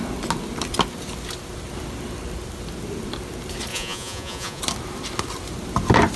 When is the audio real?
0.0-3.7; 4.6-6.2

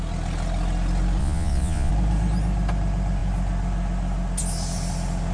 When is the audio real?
0.0-1.2; 1.9-5.3

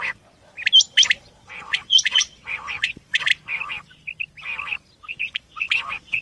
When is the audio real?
0.4-1.3; 3.3-5.1

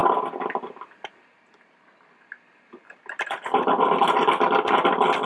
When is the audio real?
0.0-5.3

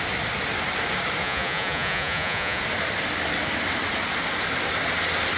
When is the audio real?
0.0-1.2; 2.6-5.4

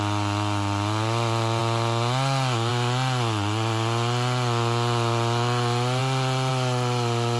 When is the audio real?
0.0-7.4

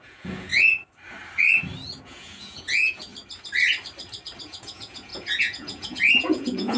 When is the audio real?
0.5-2.0; 3.1-4.4